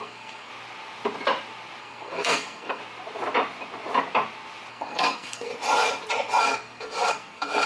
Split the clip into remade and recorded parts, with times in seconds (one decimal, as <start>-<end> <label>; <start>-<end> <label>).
0.0-0.5 remade; 0.5-1.8 recorded; 1.8-2.8 remade; 2.8-4.7 recorded; 4.7-5.5 remade; 5.5-6.4 recorded; 6.4-7.7 remade